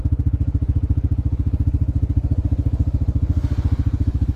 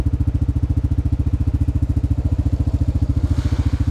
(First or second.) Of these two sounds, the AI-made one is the first